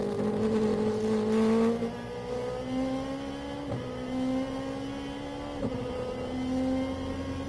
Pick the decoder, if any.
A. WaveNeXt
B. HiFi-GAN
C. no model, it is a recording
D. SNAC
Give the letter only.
C